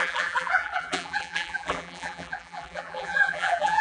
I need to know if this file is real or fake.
fake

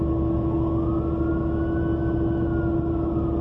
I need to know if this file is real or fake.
real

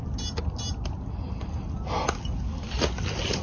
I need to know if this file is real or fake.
real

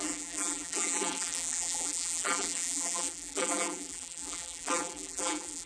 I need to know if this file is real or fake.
fake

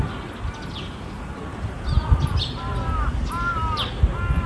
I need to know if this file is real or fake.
real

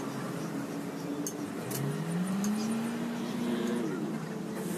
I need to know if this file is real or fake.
real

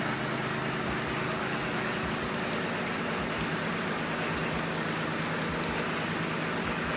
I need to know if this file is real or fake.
real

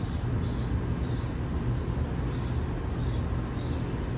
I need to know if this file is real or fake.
real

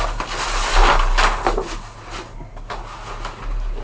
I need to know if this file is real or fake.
real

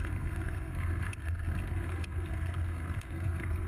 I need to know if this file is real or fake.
fake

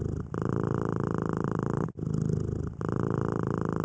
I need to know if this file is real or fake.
real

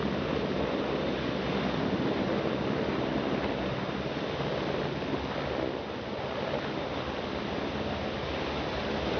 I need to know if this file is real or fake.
real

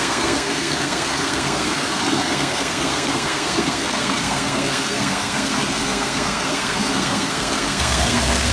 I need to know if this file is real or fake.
fake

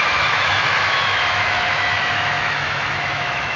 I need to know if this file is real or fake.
fake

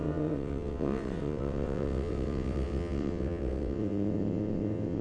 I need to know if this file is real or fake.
fake